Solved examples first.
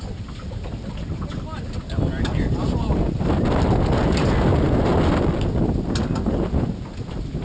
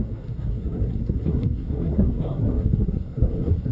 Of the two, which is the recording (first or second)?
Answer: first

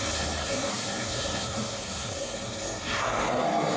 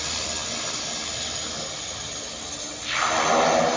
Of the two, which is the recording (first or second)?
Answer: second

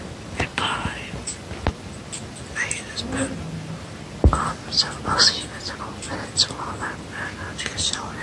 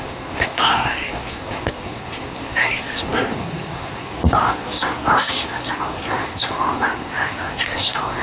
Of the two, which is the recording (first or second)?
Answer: first